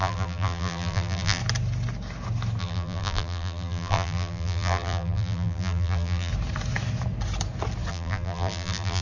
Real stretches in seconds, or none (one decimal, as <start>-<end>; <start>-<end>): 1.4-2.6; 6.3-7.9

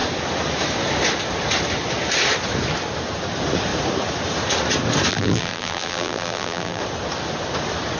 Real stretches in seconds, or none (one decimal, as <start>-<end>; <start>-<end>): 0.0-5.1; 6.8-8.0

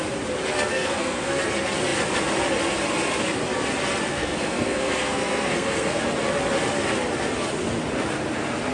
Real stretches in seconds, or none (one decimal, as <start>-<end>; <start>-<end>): 0.0-0.7; 1.4-4.1; 6.0-8.7